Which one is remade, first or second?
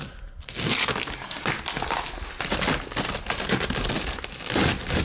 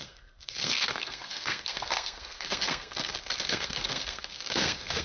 second